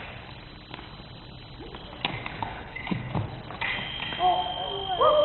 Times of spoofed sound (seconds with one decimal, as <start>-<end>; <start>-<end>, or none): 2.4-3.1